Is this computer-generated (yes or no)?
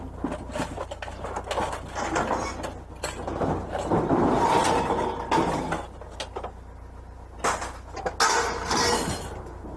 no